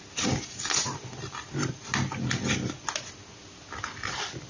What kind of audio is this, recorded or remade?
recorded